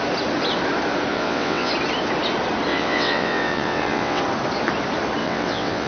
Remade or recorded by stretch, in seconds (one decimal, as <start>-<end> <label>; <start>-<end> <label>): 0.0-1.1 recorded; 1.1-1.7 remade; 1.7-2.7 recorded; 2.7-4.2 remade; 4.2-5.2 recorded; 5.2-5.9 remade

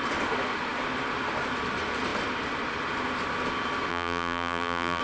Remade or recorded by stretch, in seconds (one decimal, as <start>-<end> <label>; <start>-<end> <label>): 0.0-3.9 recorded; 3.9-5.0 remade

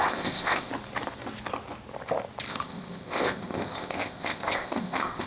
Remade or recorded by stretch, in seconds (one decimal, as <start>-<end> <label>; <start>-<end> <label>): 0.0-0.7 remade; 0.7-2.5 recorded; 2.5-5.3 remade

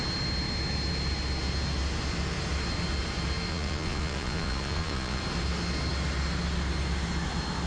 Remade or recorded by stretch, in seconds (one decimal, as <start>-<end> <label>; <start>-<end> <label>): 0.0-3.5 recorded; 3.5-5.2 remade; 5.2-7.7 recorded

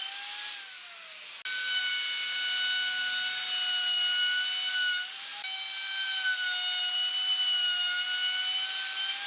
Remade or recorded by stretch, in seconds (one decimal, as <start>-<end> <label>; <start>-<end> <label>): 0.0-9.3 recorded

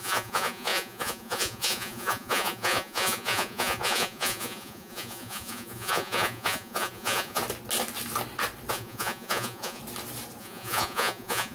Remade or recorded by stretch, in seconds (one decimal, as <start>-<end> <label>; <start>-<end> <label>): 0.0-7.4 remade; 7.4-8.7 recorded; 8.7-9.8 remade; 9.8-10.4 recorded; 10.4-11.5 remade